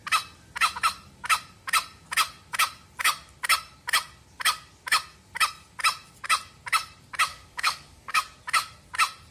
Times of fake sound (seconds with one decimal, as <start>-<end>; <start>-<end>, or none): 7.3-8.2